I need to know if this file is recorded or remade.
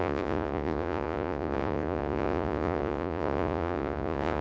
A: remade